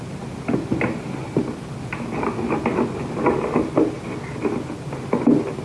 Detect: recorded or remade recorded